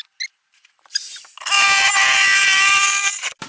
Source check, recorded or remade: recorded